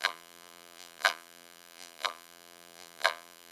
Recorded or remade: remade